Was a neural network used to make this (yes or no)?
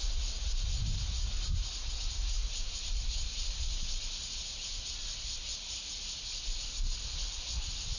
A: no